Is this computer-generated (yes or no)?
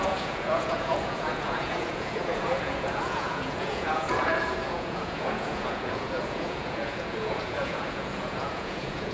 yes